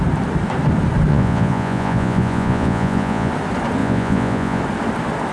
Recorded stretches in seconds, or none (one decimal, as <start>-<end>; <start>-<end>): 0.0-1.1; 3.3-3.8; 4.6-5.3